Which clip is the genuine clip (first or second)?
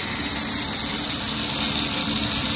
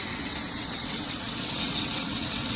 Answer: first